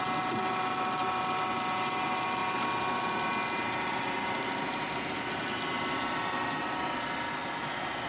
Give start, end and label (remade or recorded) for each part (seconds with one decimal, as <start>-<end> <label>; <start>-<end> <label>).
0.0-8.1 recorded